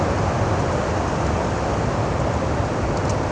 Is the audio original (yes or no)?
yes